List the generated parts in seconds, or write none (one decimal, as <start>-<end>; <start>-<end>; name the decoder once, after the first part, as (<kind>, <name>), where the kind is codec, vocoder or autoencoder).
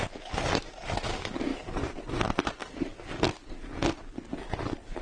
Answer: none